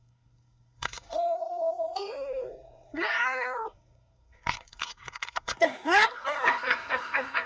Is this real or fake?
fake